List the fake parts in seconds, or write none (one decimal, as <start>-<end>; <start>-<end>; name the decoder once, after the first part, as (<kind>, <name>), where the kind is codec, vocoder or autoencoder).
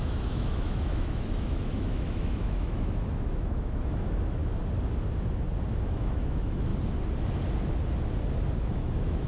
0.0-4.4 (autoencoder, DAC-VAE); 5.7-6.7; 8.6-9.3